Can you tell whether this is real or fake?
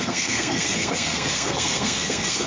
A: fake